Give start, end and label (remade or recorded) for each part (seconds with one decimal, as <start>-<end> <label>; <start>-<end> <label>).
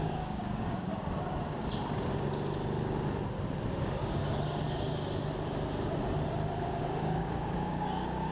0.0-0.9 remade; 0.9-3.8 recorded; 3.8-4.2 remade; 4.2-6.8 recorded; 6.8-8.3 remade